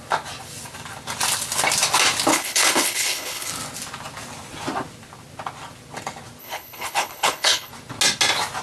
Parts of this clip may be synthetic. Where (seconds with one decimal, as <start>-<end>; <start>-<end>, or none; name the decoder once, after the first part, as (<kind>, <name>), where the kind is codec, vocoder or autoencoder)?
2.3-3.5 (codec, HILCodec); 6.4-7.7